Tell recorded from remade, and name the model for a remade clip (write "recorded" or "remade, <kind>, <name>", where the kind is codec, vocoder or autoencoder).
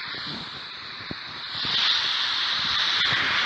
remade, vocoder, BigVGAN v2